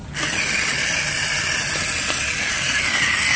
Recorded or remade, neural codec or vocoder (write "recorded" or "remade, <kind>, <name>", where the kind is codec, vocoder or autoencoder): recorded